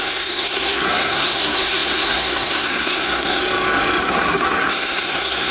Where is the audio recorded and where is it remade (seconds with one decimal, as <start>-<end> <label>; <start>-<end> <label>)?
0.0-3.4 remade; 3.4-4.0 recorded; 4.0-5.5 remade

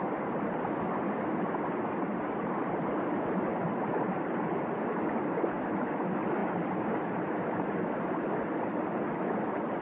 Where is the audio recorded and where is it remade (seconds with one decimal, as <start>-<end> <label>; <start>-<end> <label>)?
0.0-9.8 recorded

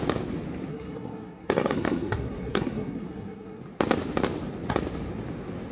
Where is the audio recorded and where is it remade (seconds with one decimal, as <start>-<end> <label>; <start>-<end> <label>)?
0.0-0.7 recorded; 0.7-3.6 remade; 3.6-5.7 recorded

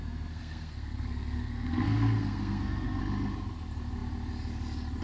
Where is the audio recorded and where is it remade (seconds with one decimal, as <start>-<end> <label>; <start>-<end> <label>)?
0.0-3.0 remade; 3.0-5.0 recorded

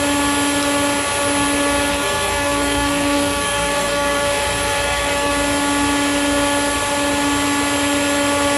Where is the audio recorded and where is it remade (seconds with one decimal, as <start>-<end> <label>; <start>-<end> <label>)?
0.0-1.9 recorded; 1.9-5.3 remade; 5.3-8.6 recorded